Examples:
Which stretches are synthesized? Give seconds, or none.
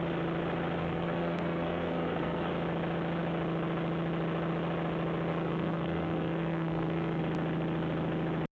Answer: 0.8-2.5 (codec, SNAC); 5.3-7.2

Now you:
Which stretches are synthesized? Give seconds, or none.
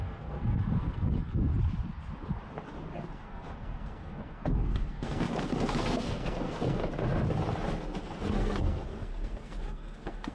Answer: 0.0-1.5 (codec, SNAC); 3.1-6.8; 7.8-10.3